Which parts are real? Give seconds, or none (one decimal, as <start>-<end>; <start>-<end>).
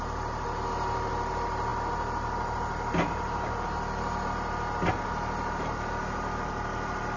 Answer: 0.0-7.2